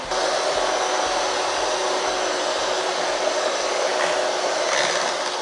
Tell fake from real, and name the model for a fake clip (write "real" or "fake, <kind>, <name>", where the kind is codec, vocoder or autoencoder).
real